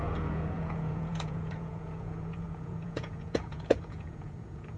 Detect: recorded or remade remade